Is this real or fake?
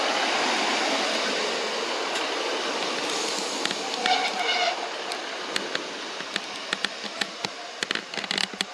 real